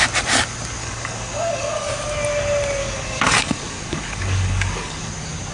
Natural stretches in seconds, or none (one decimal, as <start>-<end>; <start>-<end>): 0.0-0.8; 1.9-2.8; 5.1-5.5